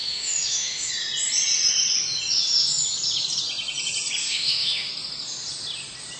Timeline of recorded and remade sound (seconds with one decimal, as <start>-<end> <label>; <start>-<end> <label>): 0.0-0.9 remade; 0.9-4.2 recorded; 4.2-4.9 remade; 4.9-6.2 recorded